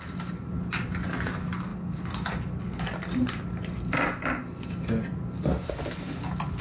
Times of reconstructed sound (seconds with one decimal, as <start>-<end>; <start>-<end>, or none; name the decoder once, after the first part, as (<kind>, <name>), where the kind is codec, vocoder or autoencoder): none